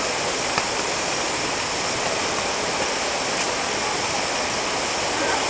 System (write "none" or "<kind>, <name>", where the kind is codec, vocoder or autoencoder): none